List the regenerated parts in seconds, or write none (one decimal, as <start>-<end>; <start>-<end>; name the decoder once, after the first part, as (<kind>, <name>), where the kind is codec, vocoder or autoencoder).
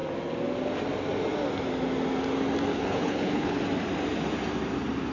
2.7-3.6 (codec, HILCodec)